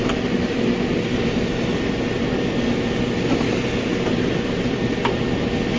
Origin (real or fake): real